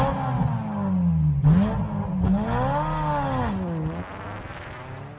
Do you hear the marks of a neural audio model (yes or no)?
no